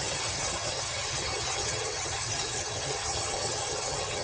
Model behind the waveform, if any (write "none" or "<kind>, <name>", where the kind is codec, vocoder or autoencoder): vocoder, HiFi-GAN